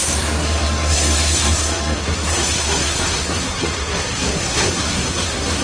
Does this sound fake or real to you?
fake